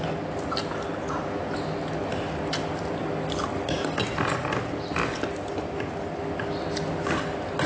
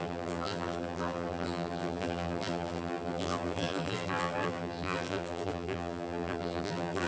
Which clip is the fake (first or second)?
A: second